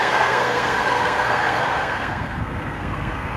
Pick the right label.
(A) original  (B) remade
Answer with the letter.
B